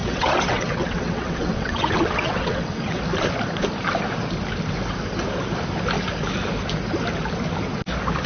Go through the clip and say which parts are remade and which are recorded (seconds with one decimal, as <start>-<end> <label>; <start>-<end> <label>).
0.0-3.0 remade; 3.0-8.3 recorded